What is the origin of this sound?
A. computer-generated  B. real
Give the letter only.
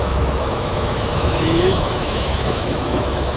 A